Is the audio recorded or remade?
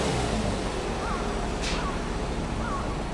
recorded